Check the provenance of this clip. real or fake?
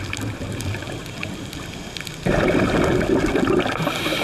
real